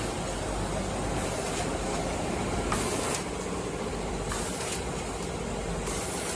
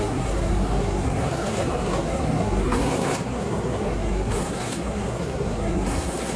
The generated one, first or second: second